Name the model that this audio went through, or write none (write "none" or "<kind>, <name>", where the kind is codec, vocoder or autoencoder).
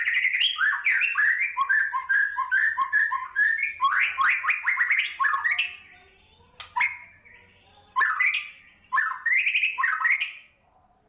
none